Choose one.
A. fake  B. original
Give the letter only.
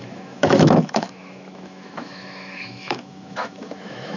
A